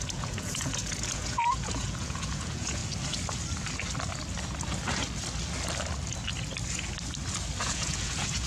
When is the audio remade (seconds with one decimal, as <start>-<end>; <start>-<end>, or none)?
0.0-2.8; 7.6-8.5